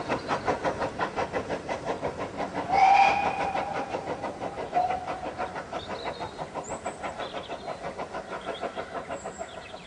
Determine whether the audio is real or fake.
real